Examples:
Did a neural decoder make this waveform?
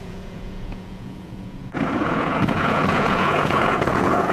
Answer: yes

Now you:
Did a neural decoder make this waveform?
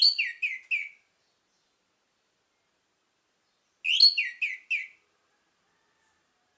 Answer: no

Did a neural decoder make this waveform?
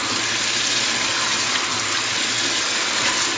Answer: no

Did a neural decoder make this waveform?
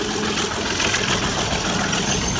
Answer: no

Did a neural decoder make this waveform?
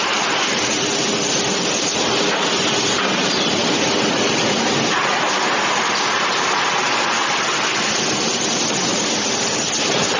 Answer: no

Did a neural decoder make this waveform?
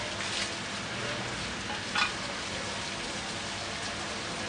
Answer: no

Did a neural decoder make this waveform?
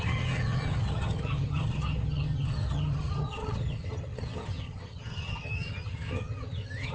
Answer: yes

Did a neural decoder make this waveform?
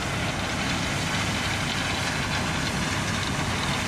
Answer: no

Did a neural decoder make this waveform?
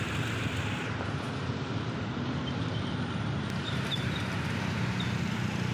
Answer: yes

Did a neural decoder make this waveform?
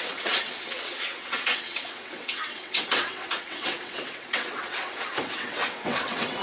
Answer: yes